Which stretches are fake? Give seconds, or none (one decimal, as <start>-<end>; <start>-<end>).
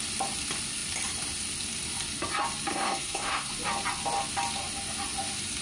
2.7-3.5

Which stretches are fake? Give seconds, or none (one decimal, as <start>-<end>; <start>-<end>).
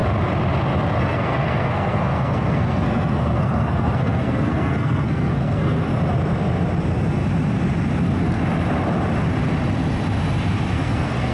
1.0-5.9; 10.7-11.3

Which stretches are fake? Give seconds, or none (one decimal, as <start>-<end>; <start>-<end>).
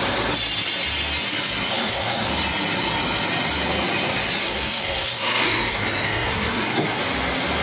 1.7-2.3; 4.4-7.0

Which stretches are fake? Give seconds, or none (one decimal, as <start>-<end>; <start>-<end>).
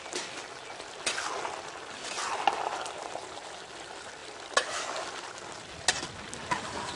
none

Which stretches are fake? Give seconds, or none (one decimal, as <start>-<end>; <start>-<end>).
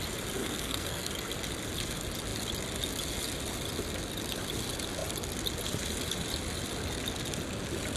0.4-1.1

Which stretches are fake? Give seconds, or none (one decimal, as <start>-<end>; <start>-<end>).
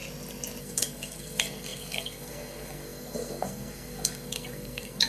0.6-5.1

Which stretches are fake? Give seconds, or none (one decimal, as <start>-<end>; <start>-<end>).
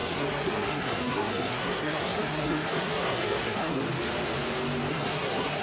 0.0-3.8; 4.9-5.6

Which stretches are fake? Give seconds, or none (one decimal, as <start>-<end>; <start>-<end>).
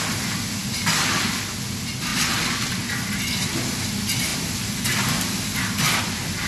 none